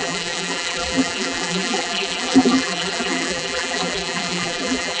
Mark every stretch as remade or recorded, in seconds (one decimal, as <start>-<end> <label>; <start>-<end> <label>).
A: 0.0-5.0 remade